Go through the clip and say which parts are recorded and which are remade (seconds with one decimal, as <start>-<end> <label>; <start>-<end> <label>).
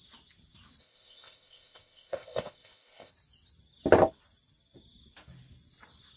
0.0-0.8 recorded; 0.8-3.1 remade; 3.1-6.2 recorded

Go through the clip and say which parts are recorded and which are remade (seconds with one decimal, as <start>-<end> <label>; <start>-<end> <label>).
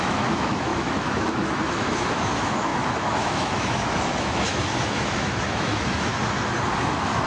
0.0-6.1 remade; 6.1-6.8 recorded; 6.8-7.3 remade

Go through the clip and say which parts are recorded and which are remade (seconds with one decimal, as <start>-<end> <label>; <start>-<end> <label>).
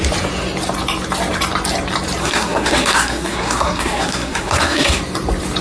0.0-2.2 recorded; 2.2-5.0 remade; 5.0-5.6 recorded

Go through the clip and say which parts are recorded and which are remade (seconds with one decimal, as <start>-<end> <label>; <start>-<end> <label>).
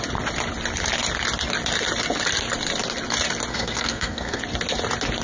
0.0-3.5 recorded; 3.5-4.4 remade; 4.4-5.2 recorded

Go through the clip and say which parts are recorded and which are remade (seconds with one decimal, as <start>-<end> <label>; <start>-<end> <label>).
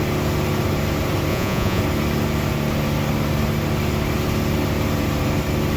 0.0-1.3 recorded; 1.3-1.8 remade; 1.8-5.8 recorded